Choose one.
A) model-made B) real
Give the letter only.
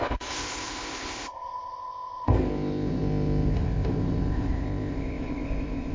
A